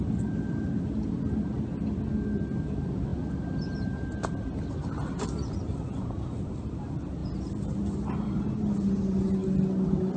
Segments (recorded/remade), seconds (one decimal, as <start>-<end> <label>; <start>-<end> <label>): 0.0-7.2 recorded; 7.2-8.4 remade; 8.4-10.2 recorded